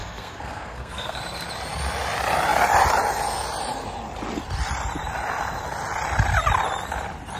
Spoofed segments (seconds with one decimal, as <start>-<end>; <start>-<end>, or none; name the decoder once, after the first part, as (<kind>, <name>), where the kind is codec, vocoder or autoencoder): 0.0-1.2 (codec, SNAC)